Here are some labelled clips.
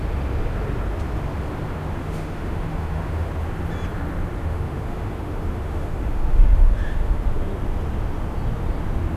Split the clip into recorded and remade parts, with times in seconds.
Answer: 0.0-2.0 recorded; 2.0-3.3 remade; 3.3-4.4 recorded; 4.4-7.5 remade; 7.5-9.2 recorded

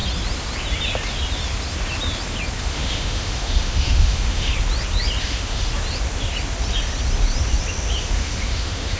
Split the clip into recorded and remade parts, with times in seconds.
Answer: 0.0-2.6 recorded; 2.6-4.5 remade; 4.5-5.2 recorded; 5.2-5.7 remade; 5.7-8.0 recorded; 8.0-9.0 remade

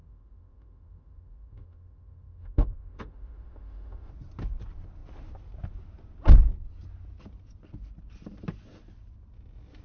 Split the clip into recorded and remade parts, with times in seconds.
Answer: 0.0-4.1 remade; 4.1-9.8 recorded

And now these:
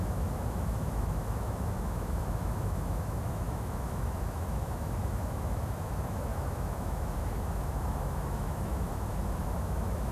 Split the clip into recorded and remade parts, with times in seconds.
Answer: 0.0-10.1 remade

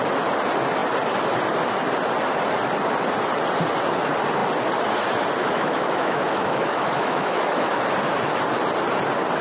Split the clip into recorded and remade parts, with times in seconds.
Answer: 0.0-5.4 recorded; 5.4-7.8 remade; 7.8-9.4 recorded